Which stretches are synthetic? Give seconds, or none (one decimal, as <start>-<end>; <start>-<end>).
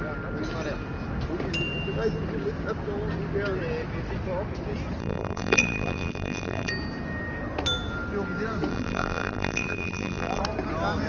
5.0-6.7; 8.7-10.4